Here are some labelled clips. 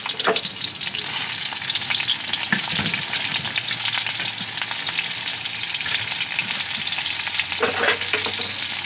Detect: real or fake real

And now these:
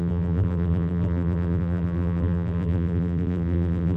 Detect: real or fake fake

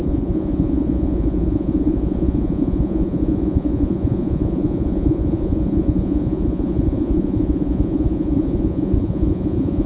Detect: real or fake fake